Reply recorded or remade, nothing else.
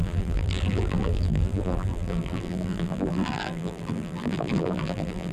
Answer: remade